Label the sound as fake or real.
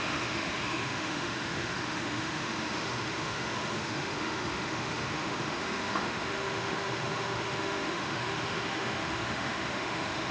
fake